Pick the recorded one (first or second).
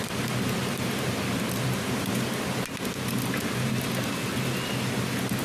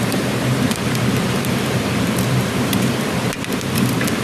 first